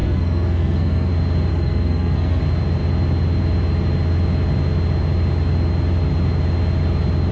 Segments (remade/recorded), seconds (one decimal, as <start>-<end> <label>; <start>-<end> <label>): 0.0-1.1 remade; 1.1-1.5 recorded; 1.5-2.4 remade; 2.4-7.3 recorded